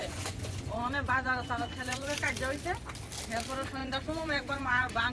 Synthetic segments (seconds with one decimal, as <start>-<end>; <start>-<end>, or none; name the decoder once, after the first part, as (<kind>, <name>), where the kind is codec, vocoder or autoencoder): 0.0-2.3 (vocoder, Vocos); 3.8-5.1